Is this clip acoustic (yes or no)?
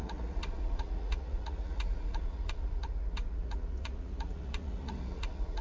no